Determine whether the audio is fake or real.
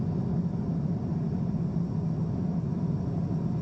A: real